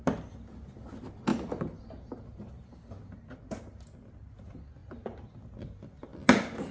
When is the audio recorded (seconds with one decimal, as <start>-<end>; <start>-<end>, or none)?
0.0-6.7